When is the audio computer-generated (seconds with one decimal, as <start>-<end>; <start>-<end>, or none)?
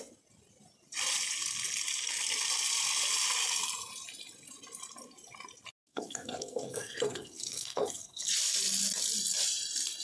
5.9-8.3